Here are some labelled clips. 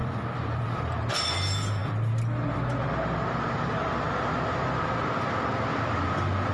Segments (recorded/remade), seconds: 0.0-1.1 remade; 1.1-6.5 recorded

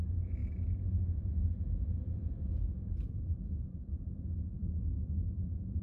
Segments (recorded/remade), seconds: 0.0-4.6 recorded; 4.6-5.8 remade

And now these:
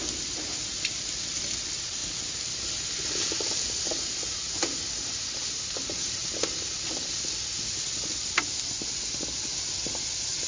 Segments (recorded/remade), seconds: 0.0-10.5 recorded